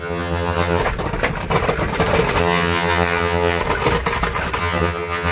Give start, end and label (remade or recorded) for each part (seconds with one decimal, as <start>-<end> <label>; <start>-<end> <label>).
0.0-0.8 remade; 0.8-2.4 recorded; 2.4-3.6 remade; 3.6-4.6 recorded; 4.6-5.3 remade